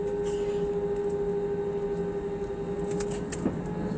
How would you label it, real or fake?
real